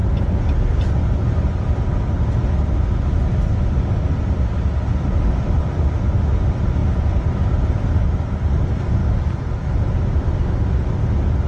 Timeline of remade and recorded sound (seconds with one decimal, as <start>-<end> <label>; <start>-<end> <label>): 0.0-11.5 recorded